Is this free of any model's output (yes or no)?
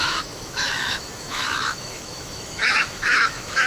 no